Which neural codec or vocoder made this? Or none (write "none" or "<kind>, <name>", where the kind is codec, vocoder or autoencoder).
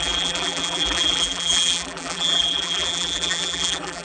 vocoder, BigVGAN v2